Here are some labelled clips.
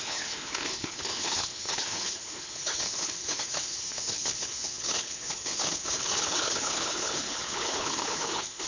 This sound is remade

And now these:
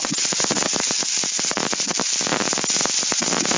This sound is recorded